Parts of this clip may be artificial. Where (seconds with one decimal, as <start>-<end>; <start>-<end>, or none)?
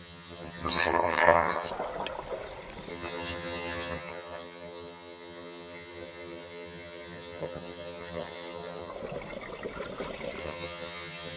0.0-1.7; 2.9-8.9; 10.4-11.4